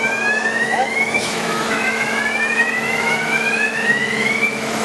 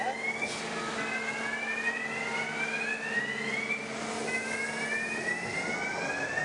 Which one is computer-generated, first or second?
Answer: first